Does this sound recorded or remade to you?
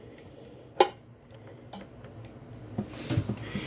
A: recorded